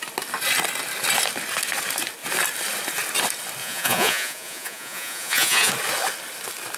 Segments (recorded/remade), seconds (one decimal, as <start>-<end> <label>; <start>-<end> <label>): 0.0-3.6 recorded; 3.6-5.7 remade; 5.7-6.8 recorded